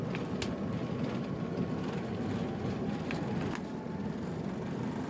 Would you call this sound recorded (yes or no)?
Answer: yes